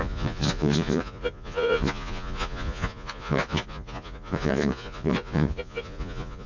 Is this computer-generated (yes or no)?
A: yes